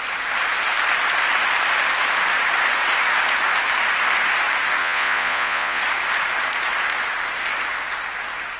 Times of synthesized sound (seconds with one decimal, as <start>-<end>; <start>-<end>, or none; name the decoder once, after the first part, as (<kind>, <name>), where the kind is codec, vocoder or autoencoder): 4.8-5.8 (vocoder, Vocos)